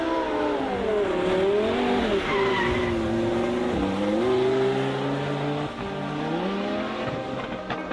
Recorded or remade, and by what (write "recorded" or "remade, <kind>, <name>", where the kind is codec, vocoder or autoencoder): recorded